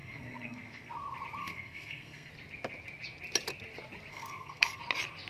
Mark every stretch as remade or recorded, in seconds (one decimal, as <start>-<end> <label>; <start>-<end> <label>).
0.0-0.9 remade; 0.9-1.4 recorded; 1.4-2.3 remade; 2.3-4.1 recorded; 4.1-4.8 remade; 4.8-5.3 recorded